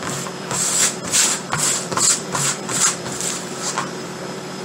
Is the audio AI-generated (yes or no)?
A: yes